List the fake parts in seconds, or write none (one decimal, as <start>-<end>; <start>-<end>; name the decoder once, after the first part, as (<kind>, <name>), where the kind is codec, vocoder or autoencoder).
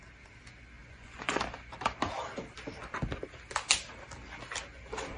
0.8-1.4 (vocoder, Vocos)